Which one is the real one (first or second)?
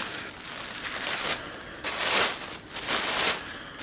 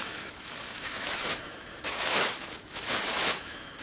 first